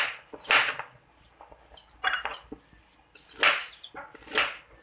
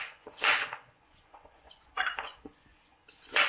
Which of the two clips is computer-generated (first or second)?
second